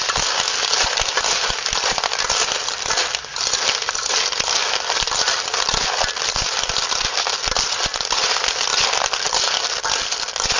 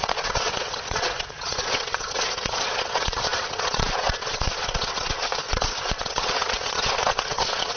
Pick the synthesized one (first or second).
second